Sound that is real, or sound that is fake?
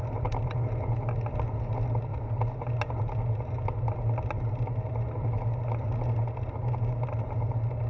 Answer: real